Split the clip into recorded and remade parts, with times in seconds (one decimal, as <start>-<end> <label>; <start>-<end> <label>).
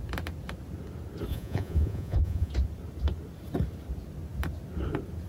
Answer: 0.0-1.3 recorded; 1.3-2.5 remade; 2.5-5.3 recorded